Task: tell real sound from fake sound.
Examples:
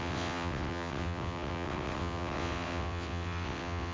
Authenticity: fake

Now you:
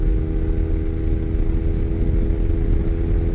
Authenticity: real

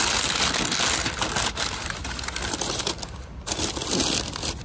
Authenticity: real